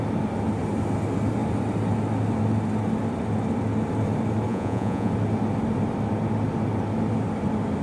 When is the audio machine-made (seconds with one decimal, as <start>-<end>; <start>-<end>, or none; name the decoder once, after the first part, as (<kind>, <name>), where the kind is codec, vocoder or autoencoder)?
4.5-5.1 (vocoder, Vocos)